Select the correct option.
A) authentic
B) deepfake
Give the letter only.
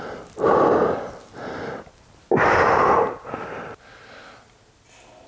A